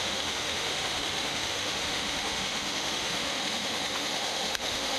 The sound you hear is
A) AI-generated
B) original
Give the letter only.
A